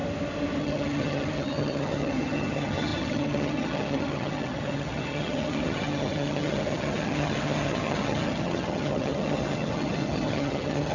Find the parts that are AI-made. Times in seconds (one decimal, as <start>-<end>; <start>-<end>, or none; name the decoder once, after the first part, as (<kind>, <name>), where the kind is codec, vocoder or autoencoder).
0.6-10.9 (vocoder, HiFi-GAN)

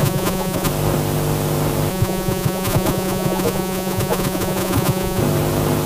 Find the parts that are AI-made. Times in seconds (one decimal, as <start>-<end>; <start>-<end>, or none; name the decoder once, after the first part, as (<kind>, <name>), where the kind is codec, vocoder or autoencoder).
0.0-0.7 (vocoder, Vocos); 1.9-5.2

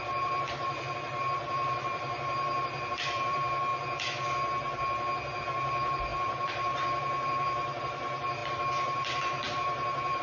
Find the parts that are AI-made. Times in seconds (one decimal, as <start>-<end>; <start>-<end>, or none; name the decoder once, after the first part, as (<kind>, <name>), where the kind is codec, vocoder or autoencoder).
0.0-3.7 (vocoder, BigVGAN v2); 5.4-10.2

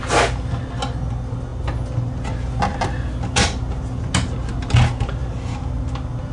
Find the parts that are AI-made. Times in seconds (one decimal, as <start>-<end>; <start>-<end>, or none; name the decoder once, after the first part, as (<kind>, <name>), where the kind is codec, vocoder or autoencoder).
none

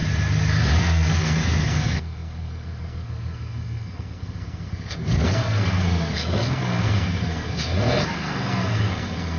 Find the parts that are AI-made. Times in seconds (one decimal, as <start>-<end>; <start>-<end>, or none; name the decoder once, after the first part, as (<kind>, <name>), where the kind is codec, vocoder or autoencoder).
0.8-9.4 (codec, SNAC)